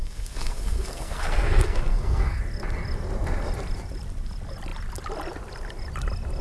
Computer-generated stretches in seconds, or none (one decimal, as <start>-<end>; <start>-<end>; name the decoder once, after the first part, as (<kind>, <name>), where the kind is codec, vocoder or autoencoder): 0.0-2.4 (codec, SNAC)